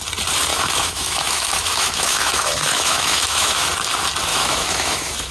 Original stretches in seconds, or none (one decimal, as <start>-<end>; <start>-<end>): 0.0-0.5; 3.7-4.3